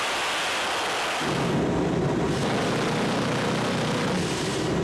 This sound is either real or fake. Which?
real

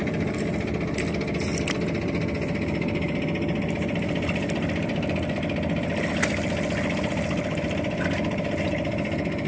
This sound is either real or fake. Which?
real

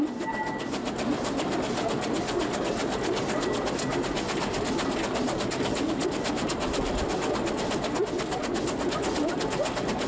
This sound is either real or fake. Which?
real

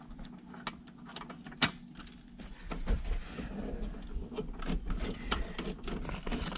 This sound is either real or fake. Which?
real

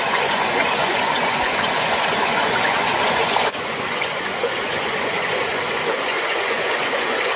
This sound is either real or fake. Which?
fake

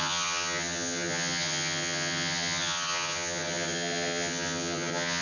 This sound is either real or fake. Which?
fake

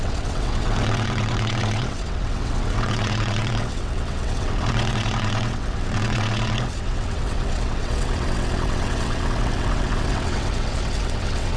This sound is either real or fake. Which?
fake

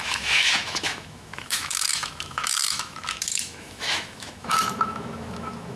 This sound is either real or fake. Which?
fake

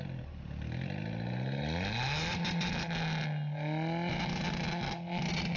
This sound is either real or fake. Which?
real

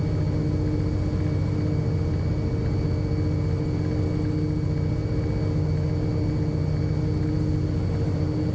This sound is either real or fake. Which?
real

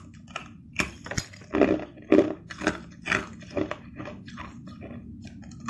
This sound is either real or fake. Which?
real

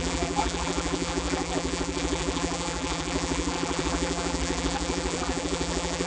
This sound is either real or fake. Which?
fake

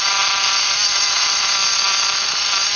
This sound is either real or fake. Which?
real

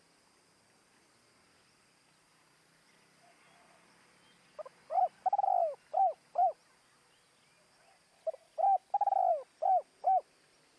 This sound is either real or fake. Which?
real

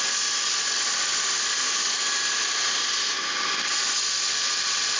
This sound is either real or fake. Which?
real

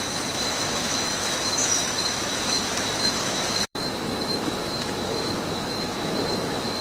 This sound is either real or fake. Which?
fake